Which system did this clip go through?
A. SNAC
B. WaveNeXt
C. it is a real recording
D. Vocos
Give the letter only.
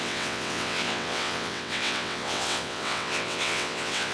B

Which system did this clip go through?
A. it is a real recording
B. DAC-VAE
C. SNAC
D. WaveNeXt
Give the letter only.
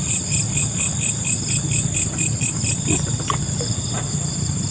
A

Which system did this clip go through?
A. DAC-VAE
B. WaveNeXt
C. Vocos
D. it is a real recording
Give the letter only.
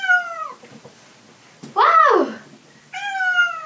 D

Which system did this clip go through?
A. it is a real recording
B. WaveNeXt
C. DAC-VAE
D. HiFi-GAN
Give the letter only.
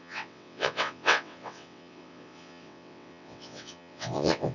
B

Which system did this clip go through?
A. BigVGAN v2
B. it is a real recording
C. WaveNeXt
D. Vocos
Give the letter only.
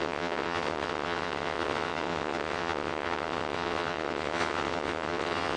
C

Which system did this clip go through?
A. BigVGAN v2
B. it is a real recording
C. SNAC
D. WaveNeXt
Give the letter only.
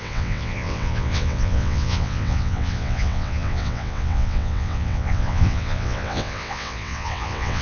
D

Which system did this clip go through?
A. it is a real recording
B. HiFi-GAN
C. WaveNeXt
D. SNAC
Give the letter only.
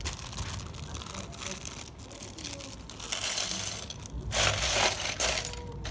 A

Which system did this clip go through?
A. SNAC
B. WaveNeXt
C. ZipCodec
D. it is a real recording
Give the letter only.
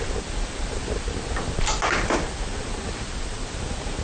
D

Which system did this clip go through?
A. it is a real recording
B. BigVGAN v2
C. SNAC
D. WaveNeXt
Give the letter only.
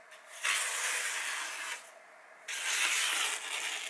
A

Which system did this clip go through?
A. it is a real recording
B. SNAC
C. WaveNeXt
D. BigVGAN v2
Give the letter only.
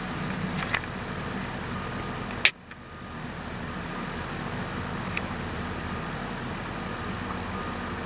A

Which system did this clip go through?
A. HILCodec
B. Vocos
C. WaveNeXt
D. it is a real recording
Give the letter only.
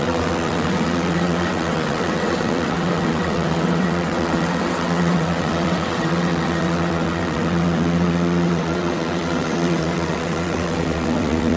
C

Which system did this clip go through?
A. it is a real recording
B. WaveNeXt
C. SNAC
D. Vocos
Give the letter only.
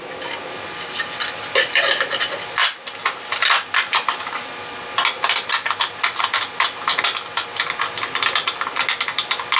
A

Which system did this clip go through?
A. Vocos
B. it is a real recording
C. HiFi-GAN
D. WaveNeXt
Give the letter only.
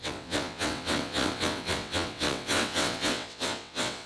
D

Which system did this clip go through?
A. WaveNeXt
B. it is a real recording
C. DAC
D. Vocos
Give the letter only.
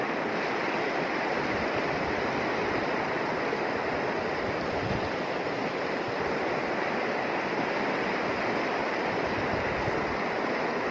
B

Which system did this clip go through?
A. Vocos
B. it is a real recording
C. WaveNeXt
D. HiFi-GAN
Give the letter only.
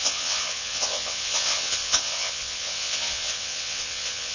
C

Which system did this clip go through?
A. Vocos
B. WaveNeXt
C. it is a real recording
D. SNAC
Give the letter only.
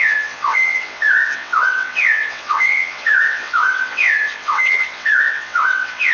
B